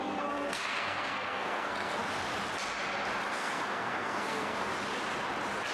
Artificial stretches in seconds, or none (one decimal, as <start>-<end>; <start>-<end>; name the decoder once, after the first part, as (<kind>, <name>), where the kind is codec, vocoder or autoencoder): 0.0-2.0 (codec, SNAC); 3.3-4.7